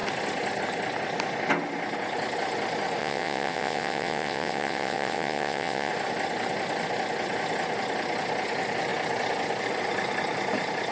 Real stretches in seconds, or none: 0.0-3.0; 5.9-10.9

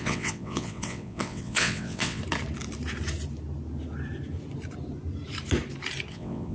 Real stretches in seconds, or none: 2.2-6.1

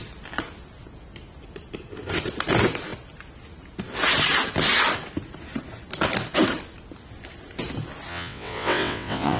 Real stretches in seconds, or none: 0.0-8.1

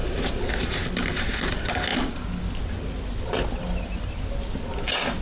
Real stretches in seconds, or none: 0.0-5.2

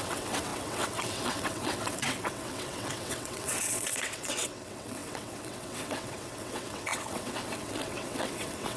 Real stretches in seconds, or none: none

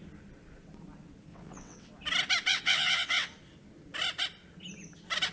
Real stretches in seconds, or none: 0.0-1.3; 1.9-2.5; 3.3-5.3

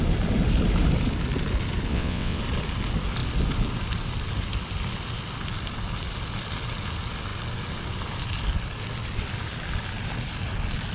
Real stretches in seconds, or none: 0.0-1.9; 2.4-10.9

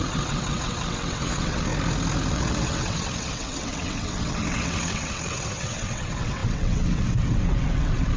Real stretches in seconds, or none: 1.7-2.3